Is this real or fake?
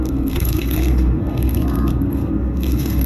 fake